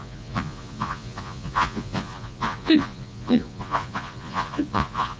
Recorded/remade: remade